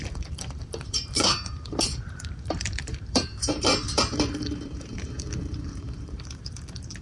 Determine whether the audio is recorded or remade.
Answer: remade